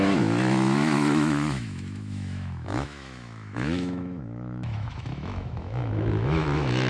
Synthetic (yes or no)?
yes